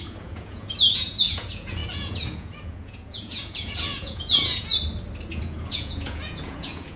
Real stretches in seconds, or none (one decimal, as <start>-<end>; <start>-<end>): 4.7-5.3